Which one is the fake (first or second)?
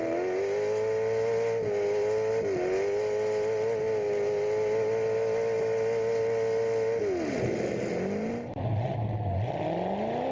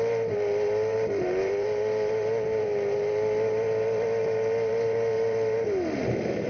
second